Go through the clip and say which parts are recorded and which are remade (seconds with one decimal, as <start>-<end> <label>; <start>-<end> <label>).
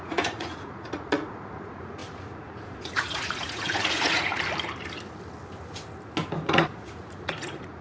0.0-4.3 remade; 4.3-6.5 recorded; 6.5-7.8 remade